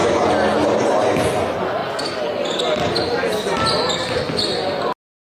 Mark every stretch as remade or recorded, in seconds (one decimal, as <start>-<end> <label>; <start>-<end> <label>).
0.0-5.4 recorded